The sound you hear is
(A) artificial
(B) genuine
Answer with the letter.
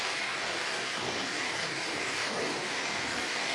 A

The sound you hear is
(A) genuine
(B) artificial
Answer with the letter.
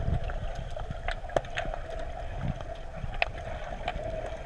A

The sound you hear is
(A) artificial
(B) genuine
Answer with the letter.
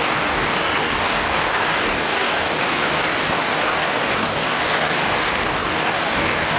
A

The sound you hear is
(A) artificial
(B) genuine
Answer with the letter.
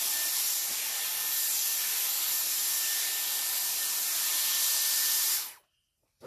B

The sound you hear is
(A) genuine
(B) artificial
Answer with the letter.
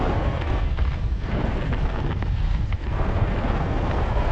B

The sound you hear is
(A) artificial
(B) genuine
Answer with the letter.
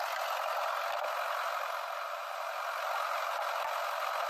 B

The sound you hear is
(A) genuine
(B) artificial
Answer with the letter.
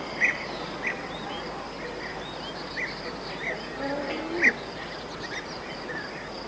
A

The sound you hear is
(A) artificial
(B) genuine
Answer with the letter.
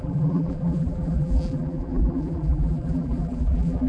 A